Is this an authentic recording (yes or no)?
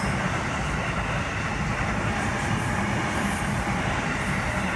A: yes